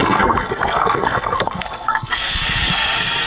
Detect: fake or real fake